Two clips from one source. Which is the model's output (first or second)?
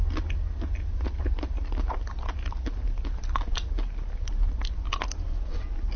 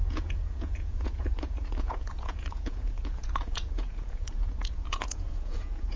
second